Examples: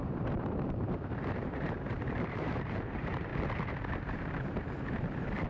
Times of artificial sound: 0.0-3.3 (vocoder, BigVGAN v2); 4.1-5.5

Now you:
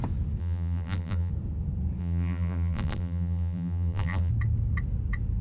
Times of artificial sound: 0.4-1.3 (vocoder, BigVGAN v2); 2.0-4.3